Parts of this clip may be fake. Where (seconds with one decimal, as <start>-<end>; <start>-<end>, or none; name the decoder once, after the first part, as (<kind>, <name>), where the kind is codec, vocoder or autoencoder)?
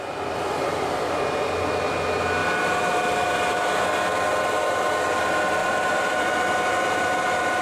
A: 5.6-7.6 (vocoder, BigVGAN v2)